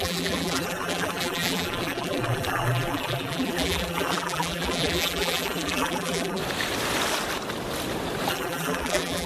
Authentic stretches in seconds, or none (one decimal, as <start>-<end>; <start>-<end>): 6.4-8.3